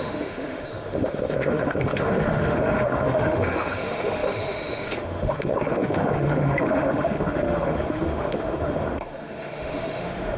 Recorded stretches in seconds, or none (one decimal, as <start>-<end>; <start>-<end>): none